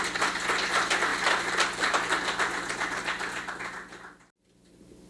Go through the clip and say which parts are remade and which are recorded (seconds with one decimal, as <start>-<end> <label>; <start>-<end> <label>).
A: 0.0-5.1 recorded